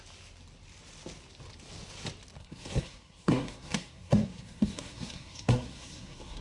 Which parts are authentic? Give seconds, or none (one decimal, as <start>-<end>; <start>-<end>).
0.0-2.4